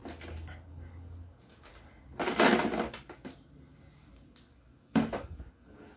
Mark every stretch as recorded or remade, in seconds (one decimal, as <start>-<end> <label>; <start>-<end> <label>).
0.0-0.7 recorded; 0.7-1.7 remade; 1.7-4.5 recorded; 4.5-6.0 remade

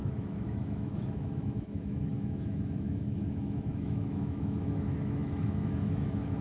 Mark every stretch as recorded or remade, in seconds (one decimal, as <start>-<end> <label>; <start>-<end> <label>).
0.0-6.4 remade

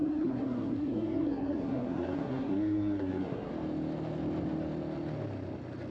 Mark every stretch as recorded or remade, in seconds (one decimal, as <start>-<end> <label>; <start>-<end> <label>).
0.0-3.5 remade; 3.5-5.9 recorded

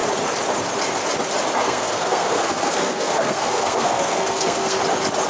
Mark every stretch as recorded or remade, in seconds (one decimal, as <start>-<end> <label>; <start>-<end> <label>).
0.0-1.6 recorded; 1.6-4.8 remade; 4.8-5.3 recorded

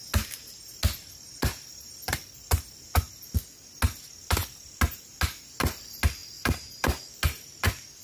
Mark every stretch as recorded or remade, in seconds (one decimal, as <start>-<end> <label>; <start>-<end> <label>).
0.0-6.2 recorded; 6.2-7.0 remade; 7.0-8.0 recorded

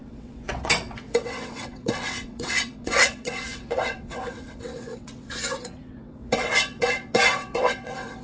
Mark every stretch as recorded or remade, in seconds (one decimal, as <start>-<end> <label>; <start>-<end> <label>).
0.0-8.2 remade

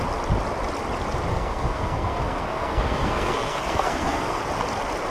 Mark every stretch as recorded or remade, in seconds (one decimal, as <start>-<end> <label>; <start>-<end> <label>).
0.0-1.3 recorded; 1.3-4.4 remade; 4.4-5.1 recorded

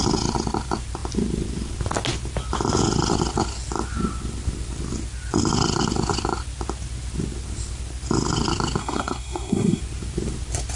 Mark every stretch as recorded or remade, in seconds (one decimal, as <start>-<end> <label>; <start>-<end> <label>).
0.0-8.8 recorded; 8.8-9.8 remade; 9.8-10.8 recorded